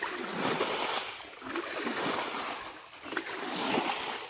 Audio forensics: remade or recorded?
recorded